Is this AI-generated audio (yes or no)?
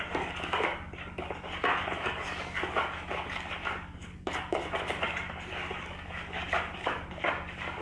yes